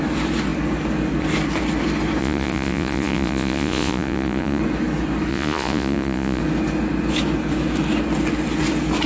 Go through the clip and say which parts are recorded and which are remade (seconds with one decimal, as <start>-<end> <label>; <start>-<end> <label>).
0.0-2.2 recorded; 2.2-4.6 remade; 4.6-5.3 recorded; 5.3-6.4 remade; 6.4-9.1 recorded